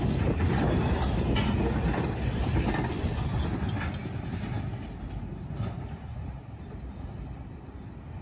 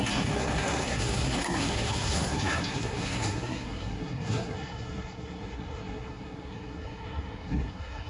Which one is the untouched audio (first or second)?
first